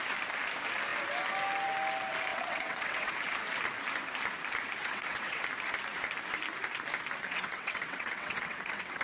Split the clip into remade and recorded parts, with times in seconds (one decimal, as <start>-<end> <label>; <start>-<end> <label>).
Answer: 0.0-2.3 recorded; 2.3-3.1 remade; 3.1-4.8 recorded; 4.8-5.4 remade; 5.4-7.2 recorded; 7.2-9.0 remade